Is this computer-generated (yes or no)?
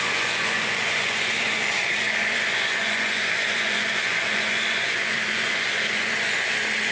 yes